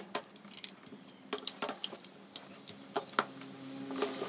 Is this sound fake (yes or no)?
no